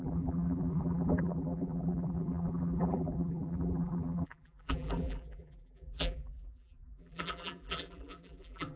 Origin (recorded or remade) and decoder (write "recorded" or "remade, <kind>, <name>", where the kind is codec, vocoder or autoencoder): remade, vocoder, BigVGAN v2